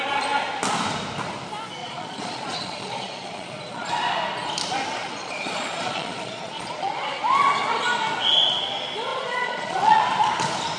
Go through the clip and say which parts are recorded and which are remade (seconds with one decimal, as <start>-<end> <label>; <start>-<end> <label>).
0.0-1.8 recorded; 1.8-3.9 remade; 3.9-5.0 recorded; 5.0-6.9 remade; 6.9-9.1 recorded; 9.1-10.0 remade; 10.0-10.8 recorded